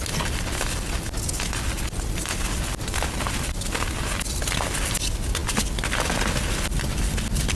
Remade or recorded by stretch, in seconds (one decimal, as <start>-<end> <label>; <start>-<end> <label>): 0.0-7.6 recorded